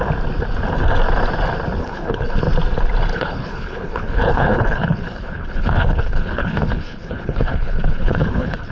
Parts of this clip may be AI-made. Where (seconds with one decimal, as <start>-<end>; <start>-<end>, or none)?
1.8-2.4; 3.1-8.7